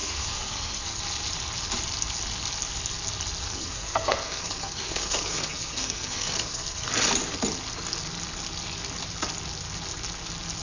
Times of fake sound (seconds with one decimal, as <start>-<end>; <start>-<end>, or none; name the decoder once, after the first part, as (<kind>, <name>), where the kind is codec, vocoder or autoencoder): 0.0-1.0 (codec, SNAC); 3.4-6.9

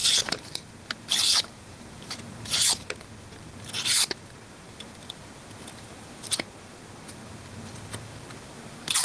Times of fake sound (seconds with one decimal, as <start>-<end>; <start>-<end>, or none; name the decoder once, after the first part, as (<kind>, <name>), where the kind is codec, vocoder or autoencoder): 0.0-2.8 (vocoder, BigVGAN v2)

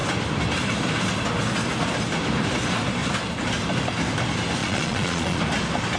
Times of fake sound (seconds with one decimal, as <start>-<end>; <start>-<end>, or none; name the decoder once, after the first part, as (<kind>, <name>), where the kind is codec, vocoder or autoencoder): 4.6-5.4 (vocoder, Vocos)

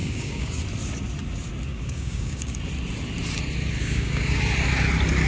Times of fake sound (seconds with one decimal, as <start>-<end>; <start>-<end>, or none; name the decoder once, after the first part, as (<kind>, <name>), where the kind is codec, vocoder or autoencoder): 0.0-0.6 (codec, DAC); 1.7-2.6; 3.8-4.4

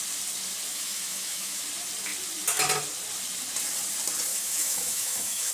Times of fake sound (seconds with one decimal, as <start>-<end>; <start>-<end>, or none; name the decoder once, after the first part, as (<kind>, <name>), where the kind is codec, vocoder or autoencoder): 0.7-1.6 (autoencoder, DAC-VAE); 4.3-5.5